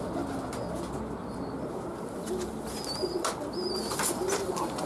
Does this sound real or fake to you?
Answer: real